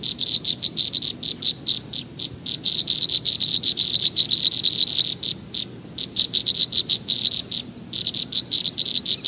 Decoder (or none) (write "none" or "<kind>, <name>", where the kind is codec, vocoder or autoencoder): none